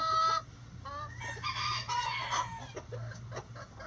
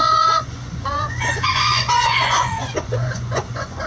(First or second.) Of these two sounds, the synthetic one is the second